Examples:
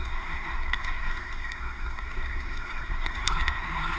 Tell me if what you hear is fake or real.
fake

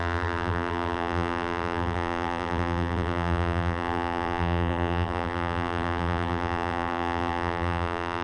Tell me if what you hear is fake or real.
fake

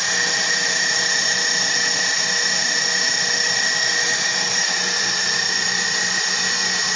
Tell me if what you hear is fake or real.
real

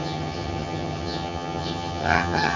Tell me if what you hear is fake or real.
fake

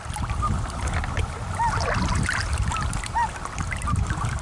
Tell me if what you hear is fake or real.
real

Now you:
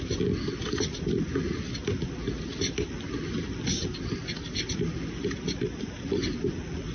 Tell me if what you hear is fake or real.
real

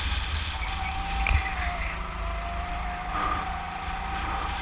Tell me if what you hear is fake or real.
real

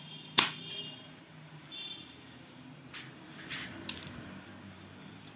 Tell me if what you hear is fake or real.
fake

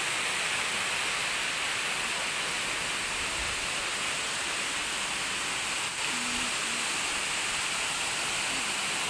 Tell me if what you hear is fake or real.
real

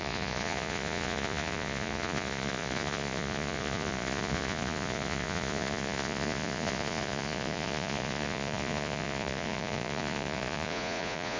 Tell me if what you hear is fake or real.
fake